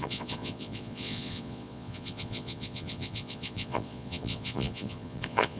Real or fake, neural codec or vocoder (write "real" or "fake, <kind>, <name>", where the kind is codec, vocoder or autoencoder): fake, vocoder, Vocos